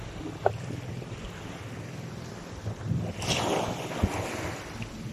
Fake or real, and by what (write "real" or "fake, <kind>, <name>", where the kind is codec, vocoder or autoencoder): real